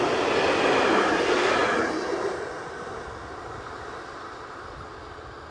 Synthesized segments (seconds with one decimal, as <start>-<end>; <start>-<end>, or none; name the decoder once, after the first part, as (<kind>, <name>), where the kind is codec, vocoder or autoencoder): none